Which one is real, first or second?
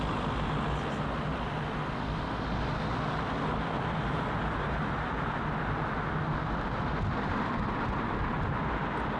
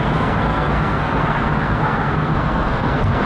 first